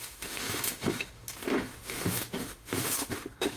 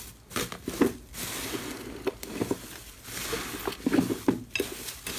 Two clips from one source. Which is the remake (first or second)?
first